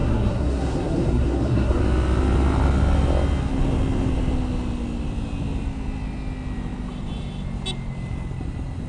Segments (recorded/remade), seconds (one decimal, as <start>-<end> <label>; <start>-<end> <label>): 0.0-1.8 remade; 1.8-8.9 recorded